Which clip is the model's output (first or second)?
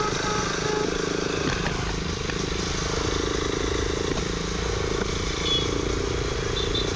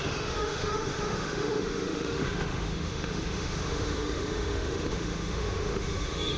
second